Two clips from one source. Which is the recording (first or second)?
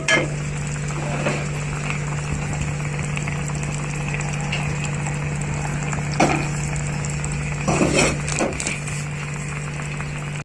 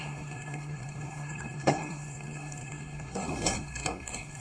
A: first